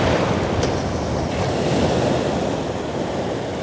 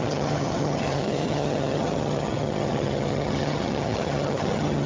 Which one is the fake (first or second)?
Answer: second